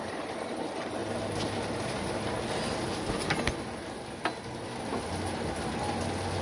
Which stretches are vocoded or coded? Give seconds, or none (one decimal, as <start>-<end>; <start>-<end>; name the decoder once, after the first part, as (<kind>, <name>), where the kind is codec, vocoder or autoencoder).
none